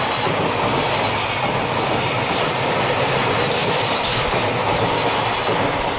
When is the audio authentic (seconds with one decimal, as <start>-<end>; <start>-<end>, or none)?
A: 0.0-6.0